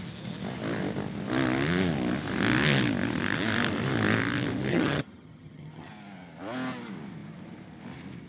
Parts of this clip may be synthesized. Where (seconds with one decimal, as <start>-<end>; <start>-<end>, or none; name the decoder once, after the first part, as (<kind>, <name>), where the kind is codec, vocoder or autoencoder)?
4.7-5.9 (vocoder, HiFi-GAN)